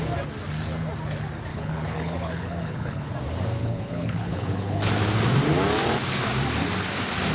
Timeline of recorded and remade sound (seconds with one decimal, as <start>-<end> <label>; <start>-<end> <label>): 0.0-1.5 recorded; 1.5-3.1 remade; 3.1-3.6 recorded; 3.6-4.9 remade; 4.9-7.3 recorded